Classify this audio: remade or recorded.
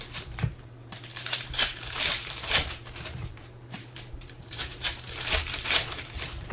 remade